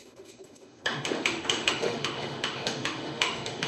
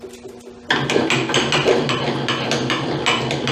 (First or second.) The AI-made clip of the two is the first